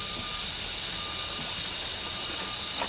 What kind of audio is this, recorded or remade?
recorded